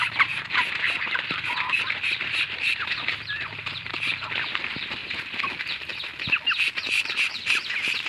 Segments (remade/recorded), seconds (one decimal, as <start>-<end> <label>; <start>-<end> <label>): 0.0-5.9 remade; 5.9-6.7 recorded; 6.7-8.1 remade